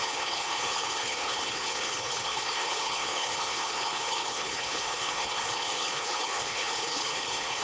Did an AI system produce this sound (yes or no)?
yes